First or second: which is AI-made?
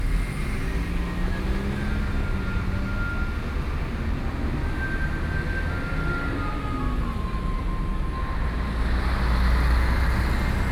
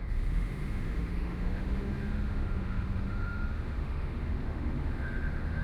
second